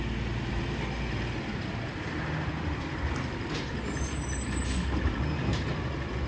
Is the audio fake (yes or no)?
no